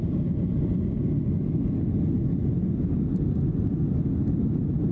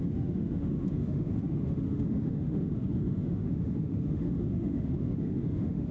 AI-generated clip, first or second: second